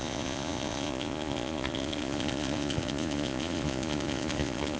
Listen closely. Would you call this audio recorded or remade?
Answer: remade